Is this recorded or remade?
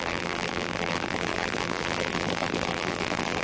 remade